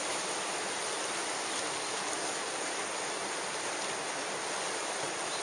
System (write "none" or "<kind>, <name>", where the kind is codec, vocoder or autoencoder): none